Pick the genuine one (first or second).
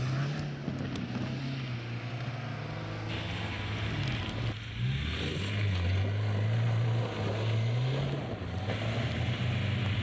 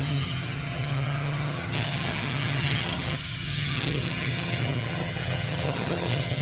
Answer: first